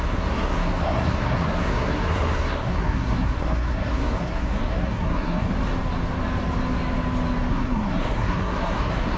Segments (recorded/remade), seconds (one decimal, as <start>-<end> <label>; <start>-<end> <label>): 0.0-5.5 remade; 5.5-7.5 recorded; 7.5-9.2 remade